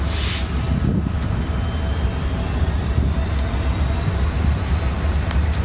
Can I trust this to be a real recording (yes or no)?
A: yes